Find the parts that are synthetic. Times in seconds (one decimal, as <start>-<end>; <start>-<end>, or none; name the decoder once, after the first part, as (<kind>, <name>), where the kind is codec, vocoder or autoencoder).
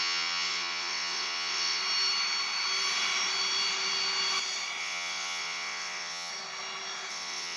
0.0-1.8 (vocoder, WaveNeXt); 4.8-6.3; 7.1-7.6